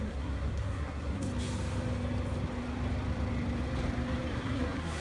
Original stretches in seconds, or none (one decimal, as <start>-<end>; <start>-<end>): 1.3-4.3

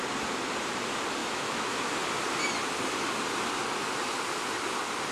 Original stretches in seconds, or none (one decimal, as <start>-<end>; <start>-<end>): 0.0-1.2; 1.9-5.1

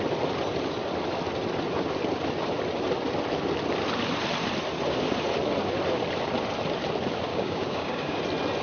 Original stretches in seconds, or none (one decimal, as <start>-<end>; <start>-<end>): 0.0-7.3; 8.2-8.6

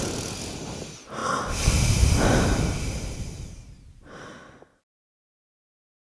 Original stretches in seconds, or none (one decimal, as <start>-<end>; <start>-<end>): 0.0-6.0

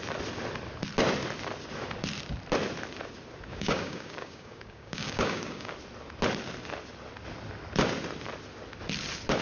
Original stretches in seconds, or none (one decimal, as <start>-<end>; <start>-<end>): 0.0-3.5; 5.7-9.4

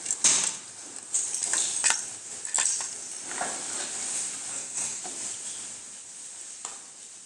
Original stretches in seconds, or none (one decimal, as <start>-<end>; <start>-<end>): 0.0-4.5; 5.0-7.3

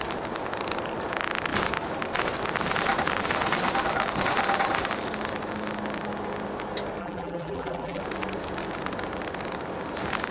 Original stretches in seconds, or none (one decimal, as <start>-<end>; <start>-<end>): 0.0-7.0; 8.0-10.3

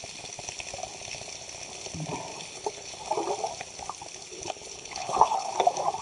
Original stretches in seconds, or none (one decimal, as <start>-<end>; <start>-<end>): 0.0-2.3; 2.9-4.3; 5.5-6.0